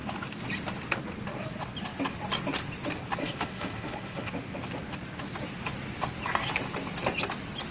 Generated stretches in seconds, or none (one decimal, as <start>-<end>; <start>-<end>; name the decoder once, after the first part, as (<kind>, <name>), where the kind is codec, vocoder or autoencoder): 3.2-4.3 (autoencoder, DAC-VAE)

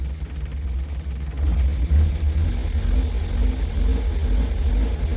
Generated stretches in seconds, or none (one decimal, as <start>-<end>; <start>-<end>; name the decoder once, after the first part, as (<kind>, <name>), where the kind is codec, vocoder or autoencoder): none

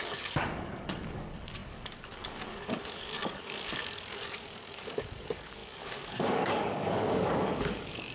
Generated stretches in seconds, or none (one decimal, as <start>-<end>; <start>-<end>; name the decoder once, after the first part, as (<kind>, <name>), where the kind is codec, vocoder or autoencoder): 0.0-8.1 (codec, DAC)

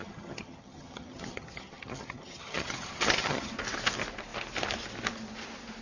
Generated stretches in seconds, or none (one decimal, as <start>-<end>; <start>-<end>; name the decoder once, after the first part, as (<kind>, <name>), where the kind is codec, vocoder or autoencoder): 0.0-3.5 (vocoder, HiFi-GAN)

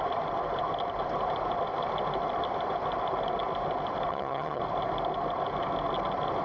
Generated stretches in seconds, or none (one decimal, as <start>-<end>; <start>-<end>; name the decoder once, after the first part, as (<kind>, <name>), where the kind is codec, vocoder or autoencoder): 4.1-4.6 (vocoder, HiFi-GAN)

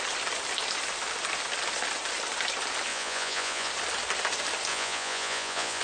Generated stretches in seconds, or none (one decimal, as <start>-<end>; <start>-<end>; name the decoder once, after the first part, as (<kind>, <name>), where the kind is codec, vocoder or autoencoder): 2.9-3.7 (vocoder, Vocos); 4.7-5.8